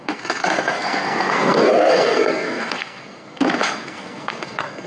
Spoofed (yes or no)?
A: yes